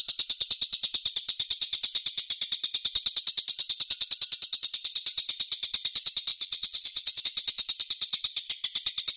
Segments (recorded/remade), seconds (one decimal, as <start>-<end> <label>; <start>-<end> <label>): 0.0-6.3 recorded; 6.3-7.2 remade; 7.2-9.2 recorded